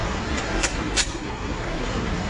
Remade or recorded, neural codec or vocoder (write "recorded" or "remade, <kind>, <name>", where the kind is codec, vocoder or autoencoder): remade, codec, SNAC